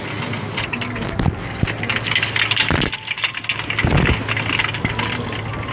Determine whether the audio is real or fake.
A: real